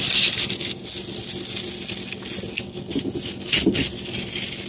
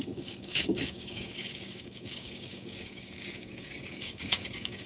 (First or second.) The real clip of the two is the first